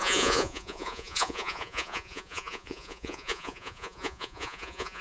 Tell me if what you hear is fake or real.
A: fake